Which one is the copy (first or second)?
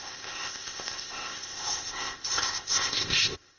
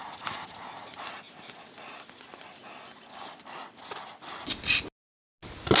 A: first